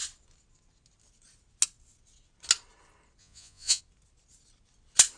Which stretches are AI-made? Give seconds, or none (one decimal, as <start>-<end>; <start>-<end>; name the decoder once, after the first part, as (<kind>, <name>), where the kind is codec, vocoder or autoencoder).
3.2-3.8 (vocoder, Vocos)